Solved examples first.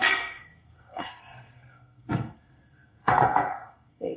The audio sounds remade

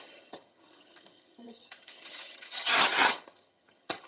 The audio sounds remade